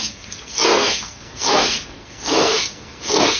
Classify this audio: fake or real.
fake